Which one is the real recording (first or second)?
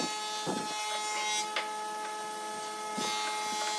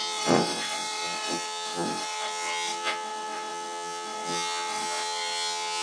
first